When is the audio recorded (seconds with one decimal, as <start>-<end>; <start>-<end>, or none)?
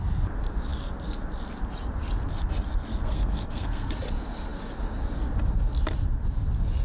0.0-2.9; 3.9-6.8